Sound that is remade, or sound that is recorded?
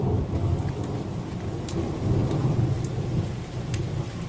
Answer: recorded